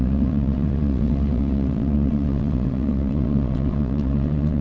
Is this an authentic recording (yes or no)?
no